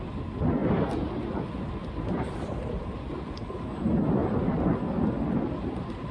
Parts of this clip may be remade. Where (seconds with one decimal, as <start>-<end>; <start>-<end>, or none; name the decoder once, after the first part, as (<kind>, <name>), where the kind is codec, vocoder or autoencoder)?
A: 4.2-4.9 (vocoder, BigVGAN v2)